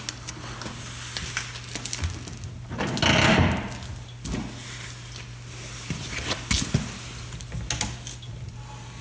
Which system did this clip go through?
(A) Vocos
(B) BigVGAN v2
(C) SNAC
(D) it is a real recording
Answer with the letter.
D